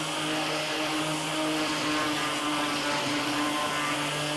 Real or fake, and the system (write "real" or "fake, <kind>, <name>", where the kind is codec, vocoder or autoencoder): real